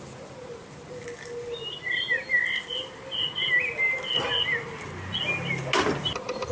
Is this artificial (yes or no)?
no